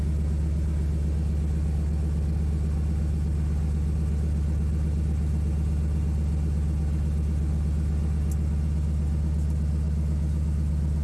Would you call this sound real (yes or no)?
yes